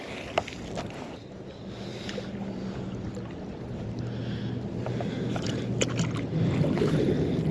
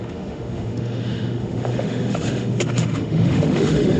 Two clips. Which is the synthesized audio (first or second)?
second